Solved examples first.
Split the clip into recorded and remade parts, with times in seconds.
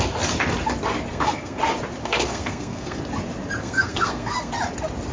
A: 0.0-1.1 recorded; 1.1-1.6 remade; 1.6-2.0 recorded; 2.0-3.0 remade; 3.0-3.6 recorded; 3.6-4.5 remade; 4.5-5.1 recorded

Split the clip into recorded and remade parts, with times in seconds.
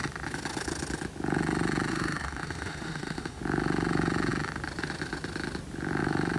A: 0.0-1.9 recorded; 1.9-3.4 remade; 3.4-6.4 recorded